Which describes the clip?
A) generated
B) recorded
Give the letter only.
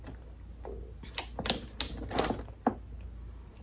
B